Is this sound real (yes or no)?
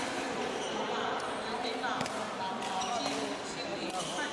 yes